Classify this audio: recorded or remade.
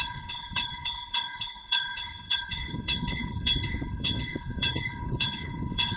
remade